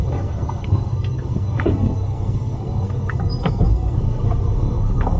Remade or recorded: remade